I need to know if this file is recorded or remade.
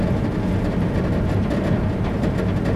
recorded